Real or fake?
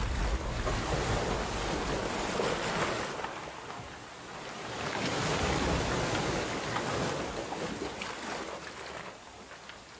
real